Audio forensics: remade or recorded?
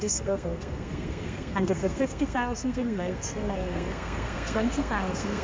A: remade